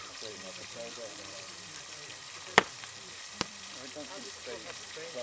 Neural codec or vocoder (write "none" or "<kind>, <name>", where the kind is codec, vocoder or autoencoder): vocoder, BigVGAN v2